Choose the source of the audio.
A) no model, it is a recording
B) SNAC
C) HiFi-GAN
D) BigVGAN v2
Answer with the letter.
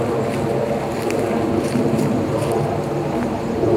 A